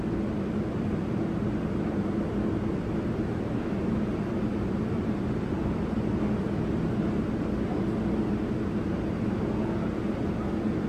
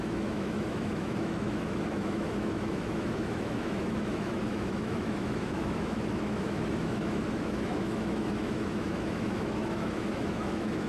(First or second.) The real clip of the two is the first